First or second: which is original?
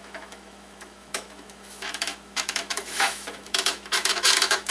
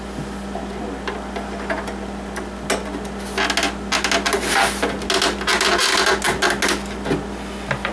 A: second